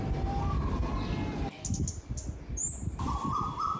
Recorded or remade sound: recorded